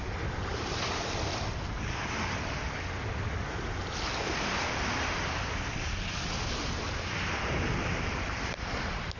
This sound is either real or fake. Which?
real